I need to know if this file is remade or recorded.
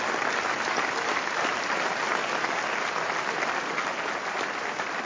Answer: recorded